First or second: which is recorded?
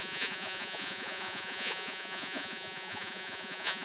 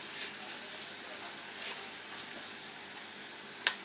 second